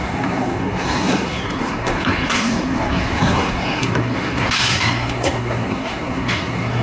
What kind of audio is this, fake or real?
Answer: fake